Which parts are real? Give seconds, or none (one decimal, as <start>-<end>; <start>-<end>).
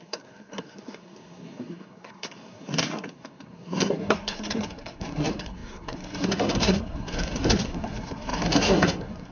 none